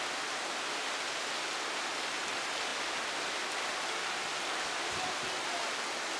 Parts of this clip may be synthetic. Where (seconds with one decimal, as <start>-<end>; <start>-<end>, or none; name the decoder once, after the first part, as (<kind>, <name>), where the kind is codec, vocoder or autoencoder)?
none